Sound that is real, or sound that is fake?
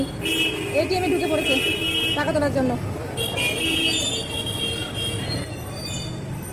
real